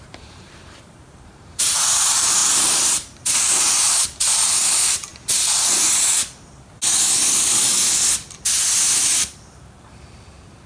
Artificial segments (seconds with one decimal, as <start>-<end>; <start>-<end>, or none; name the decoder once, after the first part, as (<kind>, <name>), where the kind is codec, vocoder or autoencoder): 0.0-5.1 (vocoder, BigVGAN v2); 8.8-10.7